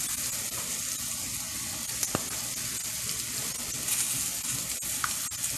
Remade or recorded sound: recorded